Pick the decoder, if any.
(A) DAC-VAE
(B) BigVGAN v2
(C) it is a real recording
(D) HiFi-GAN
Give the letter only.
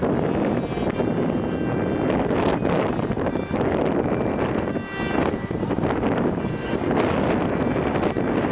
C